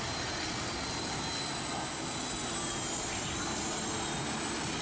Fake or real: real